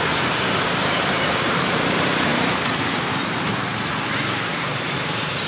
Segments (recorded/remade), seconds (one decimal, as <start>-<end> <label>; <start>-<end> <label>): 0.0-3.7 remade; 3.7-4.5 recorded; 4.5-5.5 remade